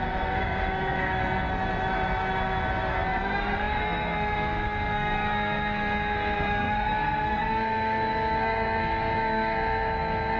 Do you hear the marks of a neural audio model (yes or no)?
yes